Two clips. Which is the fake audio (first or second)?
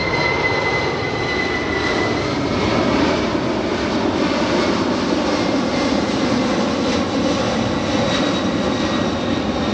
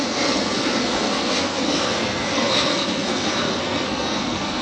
second